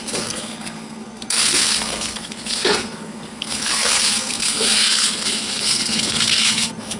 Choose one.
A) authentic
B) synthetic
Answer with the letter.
B